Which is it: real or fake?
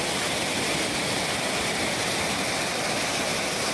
real